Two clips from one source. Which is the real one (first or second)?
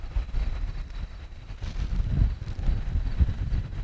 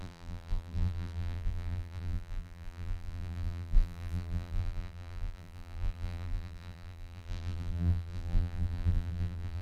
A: first